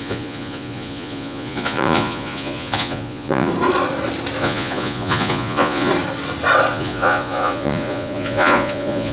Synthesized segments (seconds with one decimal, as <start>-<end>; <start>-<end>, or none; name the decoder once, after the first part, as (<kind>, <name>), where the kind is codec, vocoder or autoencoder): 0.0-3.5 (vocoder, Vocos); 4.4-5.9; 6.7-9.1